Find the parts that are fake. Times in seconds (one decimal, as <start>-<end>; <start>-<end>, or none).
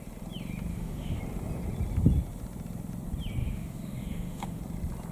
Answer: 0.7-1.2; 3.4-4.6